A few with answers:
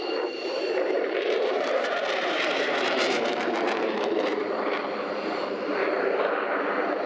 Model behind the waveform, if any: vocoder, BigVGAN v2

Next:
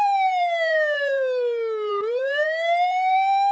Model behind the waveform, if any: vocoder, BigVGAN v2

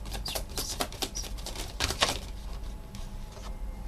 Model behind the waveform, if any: none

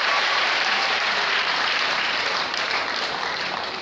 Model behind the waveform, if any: vocoder, BigVGAN v2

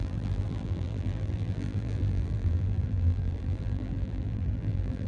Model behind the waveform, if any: vocoder, BigVGAN v2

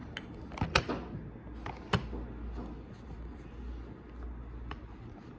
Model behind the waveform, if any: none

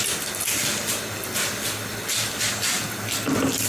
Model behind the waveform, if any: none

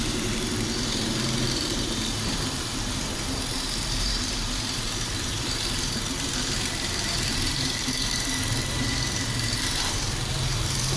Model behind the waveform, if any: vocoder, BigVGAN v2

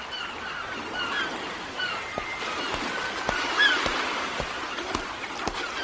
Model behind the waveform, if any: vocoder, BigVGAN v2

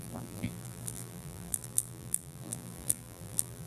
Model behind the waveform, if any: vocoder, BigVGAN v2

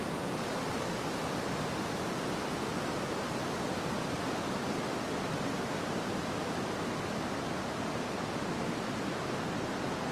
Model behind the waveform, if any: none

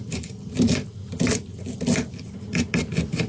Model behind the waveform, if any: none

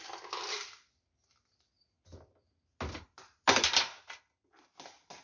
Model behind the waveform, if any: none